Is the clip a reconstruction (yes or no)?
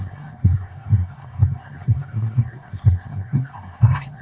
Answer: yes